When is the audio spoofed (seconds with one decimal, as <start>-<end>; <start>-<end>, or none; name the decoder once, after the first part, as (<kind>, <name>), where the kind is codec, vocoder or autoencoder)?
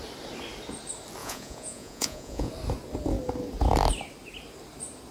1.2-2.5 (vocoder, Vocos)